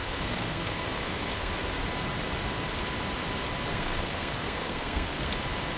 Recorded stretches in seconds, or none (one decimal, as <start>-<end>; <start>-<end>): 1.5-3.7; 5.3-5.8